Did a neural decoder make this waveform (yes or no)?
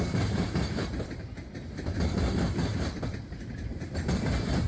yes